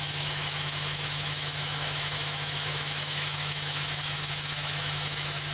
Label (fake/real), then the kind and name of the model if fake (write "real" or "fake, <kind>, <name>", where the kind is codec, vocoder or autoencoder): fake, autoencoder, DAC-VAE